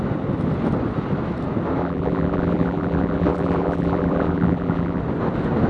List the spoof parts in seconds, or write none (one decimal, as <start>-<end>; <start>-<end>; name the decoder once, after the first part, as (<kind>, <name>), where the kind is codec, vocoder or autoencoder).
1.8-5.0 (vocoder, BigVGAN v2)